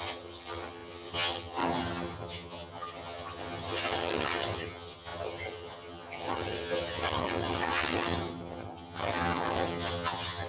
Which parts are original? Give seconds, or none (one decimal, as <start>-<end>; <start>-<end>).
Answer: none